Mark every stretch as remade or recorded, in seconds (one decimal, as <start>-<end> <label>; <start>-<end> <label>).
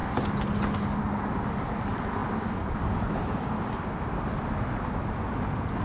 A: 0.0-5.8 recorded